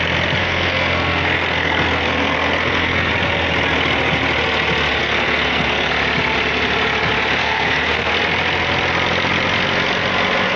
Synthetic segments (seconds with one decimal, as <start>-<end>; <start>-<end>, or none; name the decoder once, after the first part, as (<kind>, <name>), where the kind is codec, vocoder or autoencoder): 0.4-3.1 (codec, SNAC); 5.0-5.9; 7.4-8.1